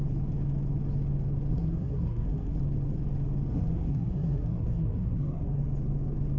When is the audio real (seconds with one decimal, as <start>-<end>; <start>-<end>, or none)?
0.0-1.5; 2.6-3.5; 5.6-6.4